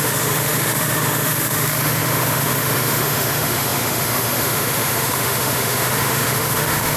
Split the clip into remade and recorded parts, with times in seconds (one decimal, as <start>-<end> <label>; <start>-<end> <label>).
0.0-7.0 remade

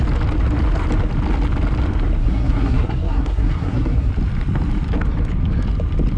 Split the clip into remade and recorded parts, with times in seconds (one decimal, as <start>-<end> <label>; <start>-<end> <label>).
0.0-2.2 recorded; 2.2-4.1 remade; 4.1-6.2 recorded

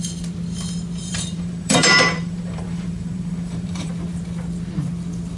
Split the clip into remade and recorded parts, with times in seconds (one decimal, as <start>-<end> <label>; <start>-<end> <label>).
0.0-1.0 recorded; 1.0-3.9 remade; 3.9-5.4 recorded

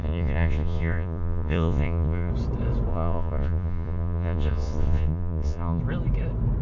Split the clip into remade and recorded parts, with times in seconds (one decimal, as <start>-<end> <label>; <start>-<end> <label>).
0.0-2.3 remade; 2.3-2.9 recorded; 2.9-5.8 remade; 5.8-6.6 recorded

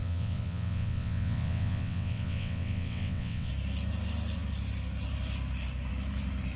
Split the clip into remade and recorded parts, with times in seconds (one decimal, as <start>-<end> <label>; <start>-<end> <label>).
0.0-3.5 remade; 3.5-6.6 recorded

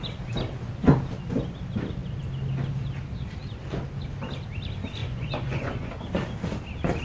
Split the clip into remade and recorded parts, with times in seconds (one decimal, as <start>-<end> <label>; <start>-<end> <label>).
0.0-5.0 recorded; 5.0-6.0 remade; 6.0-7.0 recorded

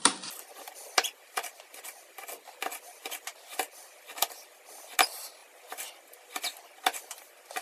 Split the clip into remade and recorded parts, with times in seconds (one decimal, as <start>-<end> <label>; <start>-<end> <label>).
0.0-5.4 recorded; 5.4-5.9 remade; 5.9-7.6 recorded